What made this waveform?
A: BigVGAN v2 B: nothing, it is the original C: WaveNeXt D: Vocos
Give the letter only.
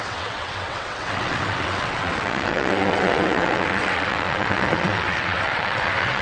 C